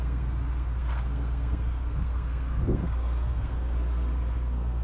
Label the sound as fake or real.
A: fake